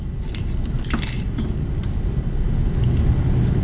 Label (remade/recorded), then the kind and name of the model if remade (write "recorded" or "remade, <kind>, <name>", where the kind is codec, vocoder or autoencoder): recorded